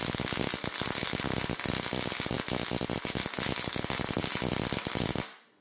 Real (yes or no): yes